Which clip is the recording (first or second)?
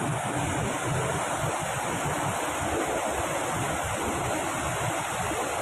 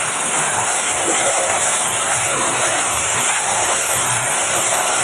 first